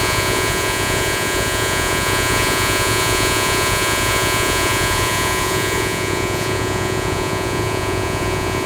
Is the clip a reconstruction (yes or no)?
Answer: yes